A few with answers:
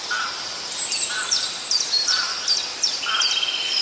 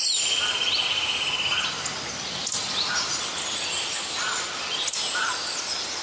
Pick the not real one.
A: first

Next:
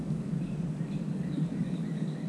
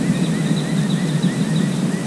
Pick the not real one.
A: first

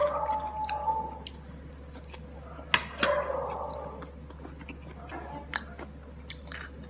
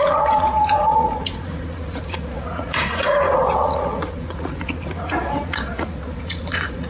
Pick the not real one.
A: second